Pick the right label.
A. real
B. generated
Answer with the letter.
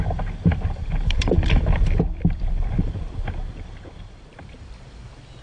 B